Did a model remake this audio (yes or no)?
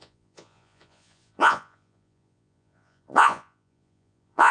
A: yes